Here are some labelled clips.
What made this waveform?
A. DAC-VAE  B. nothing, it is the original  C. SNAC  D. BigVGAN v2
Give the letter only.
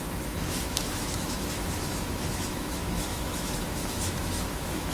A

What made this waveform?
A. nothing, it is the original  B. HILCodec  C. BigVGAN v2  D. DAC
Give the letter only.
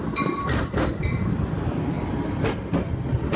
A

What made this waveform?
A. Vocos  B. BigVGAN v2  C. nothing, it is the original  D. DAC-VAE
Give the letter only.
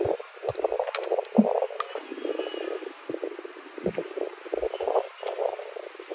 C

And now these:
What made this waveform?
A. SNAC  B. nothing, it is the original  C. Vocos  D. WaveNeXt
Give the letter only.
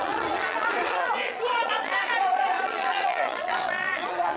C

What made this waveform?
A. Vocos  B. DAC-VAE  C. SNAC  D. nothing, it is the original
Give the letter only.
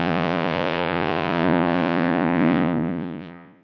A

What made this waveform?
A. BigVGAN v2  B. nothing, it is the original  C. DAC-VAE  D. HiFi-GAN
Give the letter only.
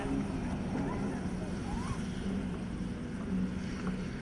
B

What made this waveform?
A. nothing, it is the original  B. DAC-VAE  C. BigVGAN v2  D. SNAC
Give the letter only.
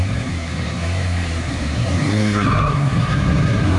D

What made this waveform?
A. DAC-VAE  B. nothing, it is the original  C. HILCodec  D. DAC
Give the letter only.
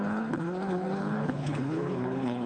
C